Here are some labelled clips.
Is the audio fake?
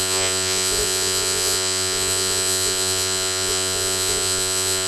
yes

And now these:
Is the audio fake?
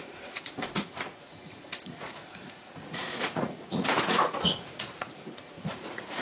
yes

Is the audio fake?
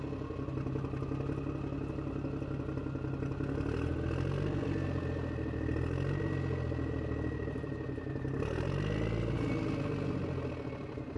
no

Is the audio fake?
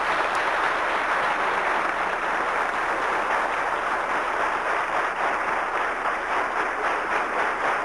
no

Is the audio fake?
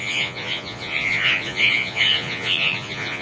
yes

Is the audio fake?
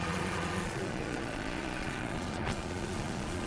yes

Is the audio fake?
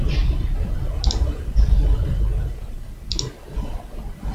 no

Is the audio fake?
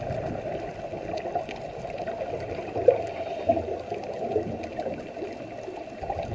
no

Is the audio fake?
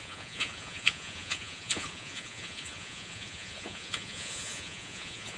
yes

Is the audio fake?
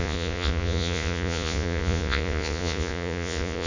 yes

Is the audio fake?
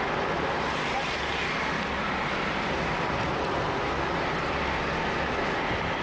no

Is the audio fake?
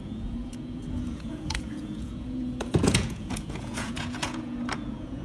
yes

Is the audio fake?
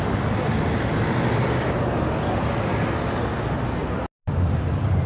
no